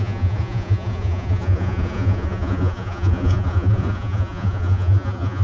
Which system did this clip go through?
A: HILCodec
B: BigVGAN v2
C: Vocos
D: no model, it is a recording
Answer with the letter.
C